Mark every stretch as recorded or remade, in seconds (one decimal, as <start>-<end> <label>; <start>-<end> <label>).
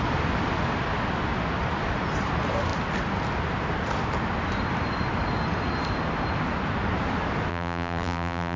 0.0-7.5 recorded; 7.5-8.6 remade